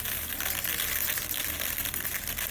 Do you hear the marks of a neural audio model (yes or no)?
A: no